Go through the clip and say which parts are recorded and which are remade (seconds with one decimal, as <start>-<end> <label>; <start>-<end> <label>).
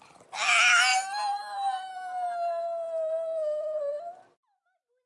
0.0-0.9 recorded; 0.9-3.9 remade; 3.9-5.1 recorded